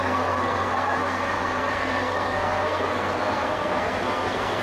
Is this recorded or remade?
remade